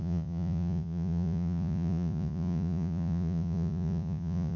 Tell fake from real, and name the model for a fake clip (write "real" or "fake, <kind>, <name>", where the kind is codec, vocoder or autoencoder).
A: fake, vocoder, Vocos